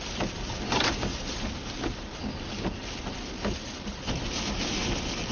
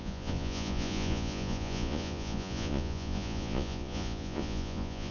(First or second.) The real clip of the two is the first